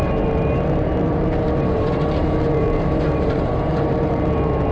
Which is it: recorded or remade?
remade